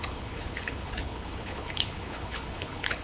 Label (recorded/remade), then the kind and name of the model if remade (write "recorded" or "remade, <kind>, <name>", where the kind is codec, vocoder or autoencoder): remade, codec, HILCodec